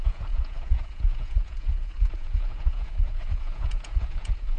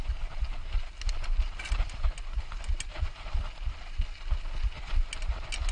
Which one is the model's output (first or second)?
first